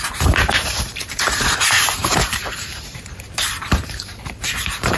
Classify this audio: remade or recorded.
remade